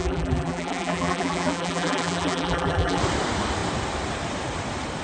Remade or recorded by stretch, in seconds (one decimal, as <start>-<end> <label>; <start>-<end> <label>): 0.0-3.0 remade; 3.0-5.0 recorded